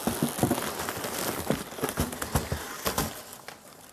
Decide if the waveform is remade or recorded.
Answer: recorded